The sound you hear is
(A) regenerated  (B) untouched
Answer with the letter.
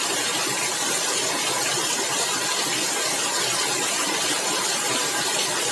B